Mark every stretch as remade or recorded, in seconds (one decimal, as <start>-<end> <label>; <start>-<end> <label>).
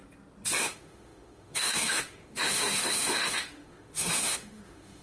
0.0-0.6 recorded; 0.6-5.0 remade